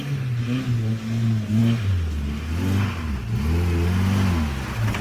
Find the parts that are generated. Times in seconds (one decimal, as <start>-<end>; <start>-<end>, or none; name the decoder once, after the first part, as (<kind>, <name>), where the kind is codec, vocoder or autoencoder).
none